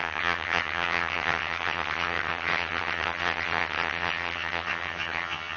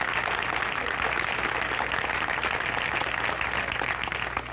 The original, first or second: second